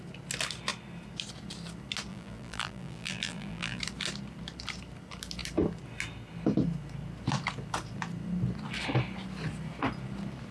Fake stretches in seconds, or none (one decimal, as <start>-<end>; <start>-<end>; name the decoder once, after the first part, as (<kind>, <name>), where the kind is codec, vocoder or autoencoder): 2.1-3.8 (vocoder, BigVGAN v2)